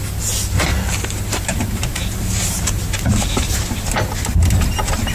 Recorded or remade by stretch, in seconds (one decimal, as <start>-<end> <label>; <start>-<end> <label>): 0.0-0.7 recorded; 0.7-3.8 remade; 3.8-5.1 recorded

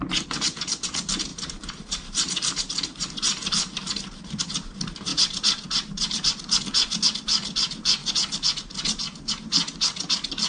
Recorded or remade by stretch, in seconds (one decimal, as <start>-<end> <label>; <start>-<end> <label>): 0.0-1.3 recorded; 1.3-4.4 remade; 4.4-5.1 recorded; 5.1-6.6 remade; 6.6-10.5 recorded

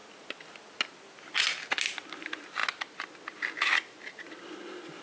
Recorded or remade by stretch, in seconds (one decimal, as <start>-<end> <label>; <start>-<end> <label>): 0.0-5.0 recorded

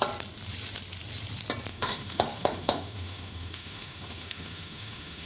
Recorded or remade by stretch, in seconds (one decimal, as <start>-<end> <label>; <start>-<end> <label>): 0.0-1.7 recorded; 1.7-5.3 remade